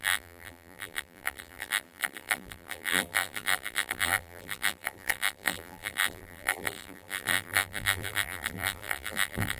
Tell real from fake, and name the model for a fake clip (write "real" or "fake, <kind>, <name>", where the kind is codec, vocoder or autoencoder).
fake, vocoder, BigVGAN v2